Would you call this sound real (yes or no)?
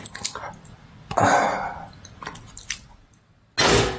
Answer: yes